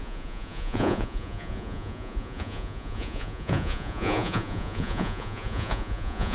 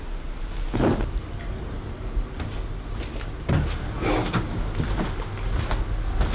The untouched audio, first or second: second